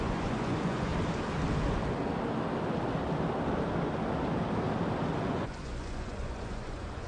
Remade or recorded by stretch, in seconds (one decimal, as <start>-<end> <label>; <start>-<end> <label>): 0.0-0.9 remade; 0.9-5.2 recorded; 5.2-7.1 remade